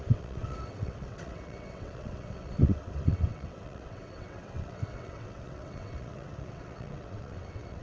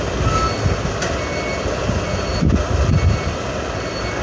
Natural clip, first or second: second